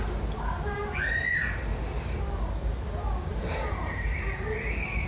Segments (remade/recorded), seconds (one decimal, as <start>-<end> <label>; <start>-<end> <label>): 0.0-0.8 remade; 0.8-3.3 recorded; 3.3-5.1 remade